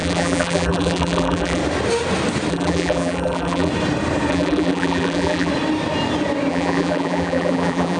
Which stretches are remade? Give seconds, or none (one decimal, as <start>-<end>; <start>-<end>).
0.0-1.6; 2.5-3.7; 4.3-5.5; 6.5-8.0